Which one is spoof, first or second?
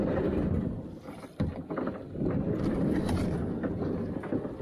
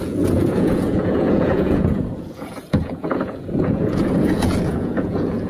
second